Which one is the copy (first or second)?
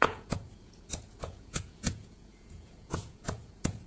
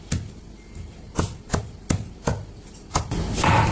first